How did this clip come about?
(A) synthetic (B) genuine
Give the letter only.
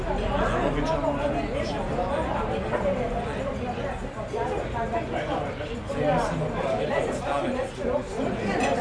B